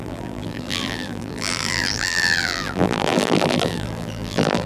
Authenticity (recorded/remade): remade